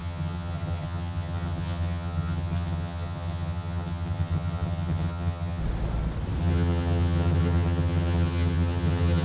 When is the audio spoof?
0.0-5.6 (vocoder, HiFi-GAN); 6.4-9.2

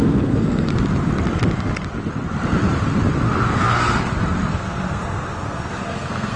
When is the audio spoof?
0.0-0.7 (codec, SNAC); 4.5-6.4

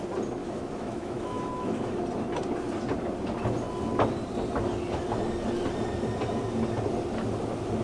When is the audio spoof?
0.4-2.0 (autoencoder, DAC-VAE)

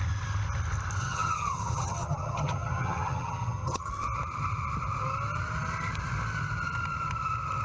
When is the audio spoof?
1.0-3.9 (vocoder, HiFi-GAN)

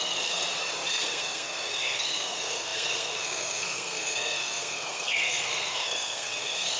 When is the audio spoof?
0.0-0.4 (codec, SNAC); 0.9-6.8

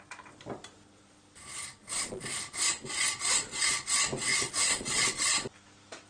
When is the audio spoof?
1.8-2.4 (vocoder, Vocos); 4.3-5.1